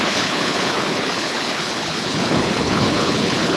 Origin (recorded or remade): remade